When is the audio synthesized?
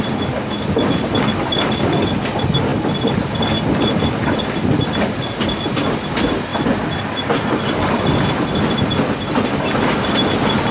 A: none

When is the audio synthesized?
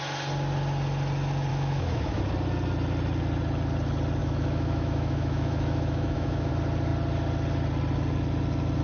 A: 1.5-2.2 (autoencoder, DAC-VAE); 4.2-6.5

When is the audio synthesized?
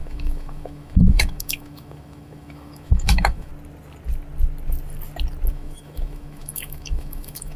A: 0.0-3.5 (autoencoder, DAC-VAE); 5.5-7.6